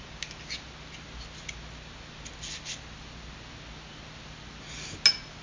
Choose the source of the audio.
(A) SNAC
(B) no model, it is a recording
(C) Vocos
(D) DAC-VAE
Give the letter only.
B